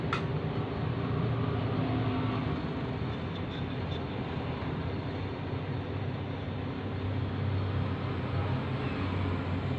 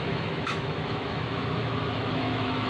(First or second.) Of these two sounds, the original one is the first